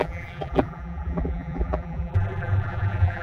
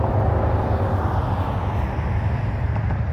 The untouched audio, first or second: second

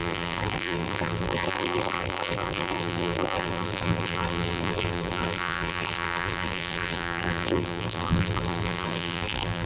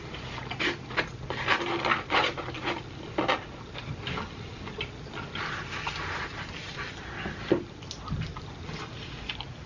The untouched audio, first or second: second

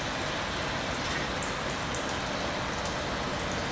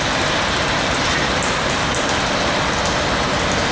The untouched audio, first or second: first